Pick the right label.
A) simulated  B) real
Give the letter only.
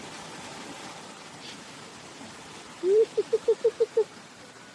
A